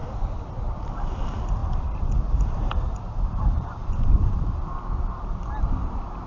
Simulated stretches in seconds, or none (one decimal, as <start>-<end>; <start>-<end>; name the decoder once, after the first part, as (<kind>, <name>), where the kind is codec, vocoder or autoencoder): 1.6-4.7 (vocoder, BigVGAN v2)